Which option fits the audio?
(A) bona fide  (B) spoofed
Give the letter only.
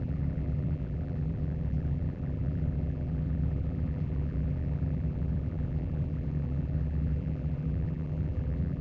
B